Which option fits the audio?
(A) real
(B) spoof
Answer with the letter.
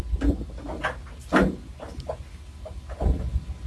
A